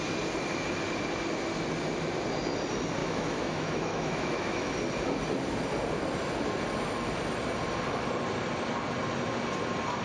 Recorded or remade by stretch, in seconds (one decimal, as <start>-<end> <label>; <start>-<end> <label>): 0.0-3.0 recorded; 3.0-4.7 remade; 4.7-10.0 recorded